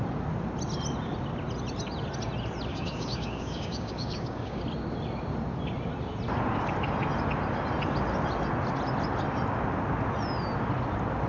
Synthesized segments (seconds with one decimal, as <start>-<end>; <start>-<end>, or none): 2.7-4.6